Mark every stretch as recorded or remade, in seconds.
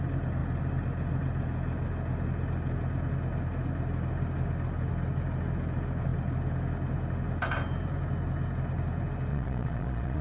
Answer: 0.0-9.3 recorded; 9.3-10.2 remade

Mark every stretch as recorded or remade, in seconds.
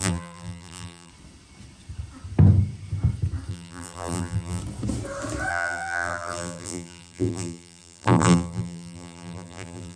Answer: 0.0-1.1 remade; 1.1-3.5 recorded; 3.5-4.6 remade; 4.6-5.5 recorded; 5.5-10.0 remade